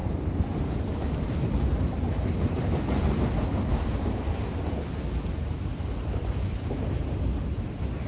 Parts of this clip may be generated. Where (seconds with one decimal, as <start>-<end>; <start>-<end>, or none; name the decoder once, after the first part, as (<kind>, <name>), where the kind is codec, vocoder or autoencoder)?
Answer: 0.0-4.0 (vocoder, BigVGAN v2); 5.4-6.7